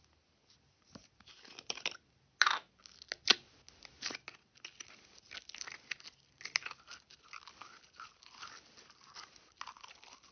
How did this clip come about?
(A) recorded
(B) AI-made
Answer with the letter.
A